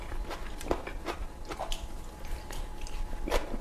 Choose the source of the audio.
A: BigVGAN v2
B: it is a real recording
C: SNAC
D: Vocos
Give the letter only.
B